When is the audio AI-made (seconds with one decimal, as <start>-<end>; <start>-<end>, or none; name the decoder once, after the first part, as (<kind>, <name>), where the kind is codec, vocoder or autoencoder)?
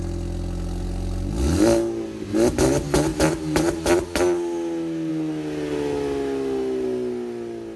none